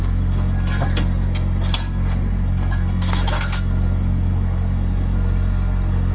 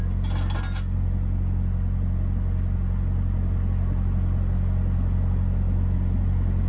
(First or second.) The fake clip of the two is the first